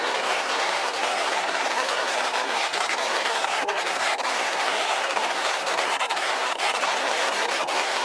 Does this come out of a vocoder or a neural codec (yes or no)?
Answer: yes